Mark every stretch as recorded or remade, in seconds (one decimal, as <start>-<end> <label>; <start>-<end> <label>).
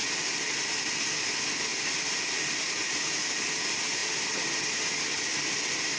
0.0-6.0 recorded